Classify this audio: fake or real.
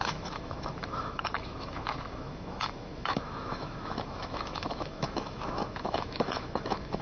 fake